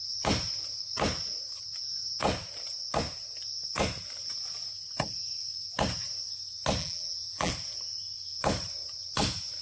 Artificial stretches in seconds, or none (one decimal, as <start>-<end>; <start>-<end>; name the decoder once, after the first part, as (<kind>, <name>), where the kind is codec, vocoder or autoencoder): 6.8-7.5 (vocoder, BigVGAN v2)